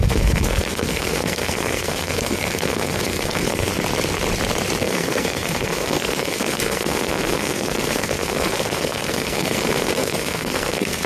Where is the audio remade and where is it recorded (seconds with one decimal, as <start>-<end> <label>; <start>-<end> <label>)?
0.0-3.7 remade; 3.7-4.8 recorded; 4.8-11.1 remade

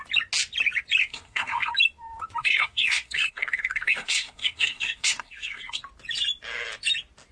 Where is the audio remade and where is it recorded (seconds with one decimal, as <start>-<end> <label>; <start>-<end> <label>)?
0.0-1.0 recorded; 1.0-1.7 remade; 1.7-2.4 recorded; 2.4-5.8 remade; 5.8-7.3 recorded